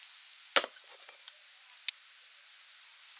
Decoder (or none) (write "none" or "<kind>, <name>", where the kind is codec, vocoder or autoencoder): none